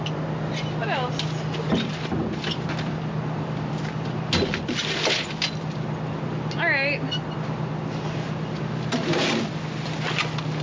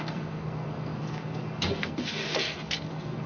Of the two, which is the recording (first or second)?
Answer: first